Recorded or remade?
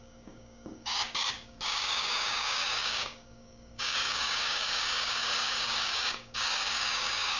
remade